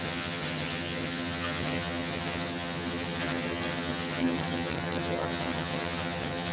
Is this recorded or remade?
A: remade